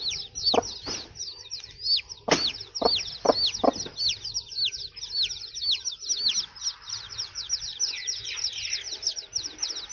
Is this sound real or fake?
real